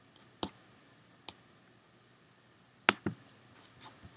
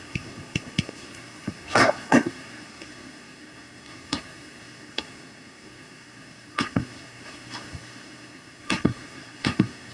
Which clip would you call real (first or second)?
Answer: first